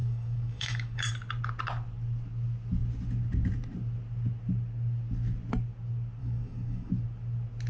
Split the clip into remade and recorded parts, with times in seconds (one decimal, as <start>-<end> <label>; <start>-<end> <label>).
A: 0.0-1.1 remade; 1.1-6.2 recorded; 6.2-6.9 remade; 6.9-7.7 recorded